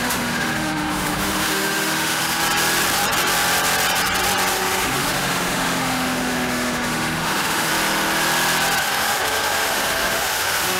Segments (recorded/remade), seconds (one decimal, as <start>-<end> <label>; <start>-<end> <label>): 0.0-2.4 remade; 2.4-4.5 recorded; 4.5-7.7 remade; 7.7-8.8 recorded; 8.8-10.8 remade